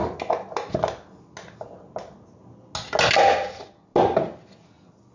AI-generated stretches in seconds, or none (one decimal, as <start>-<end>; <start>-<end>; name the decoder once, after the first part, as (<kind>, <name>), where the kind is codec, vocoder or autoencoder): none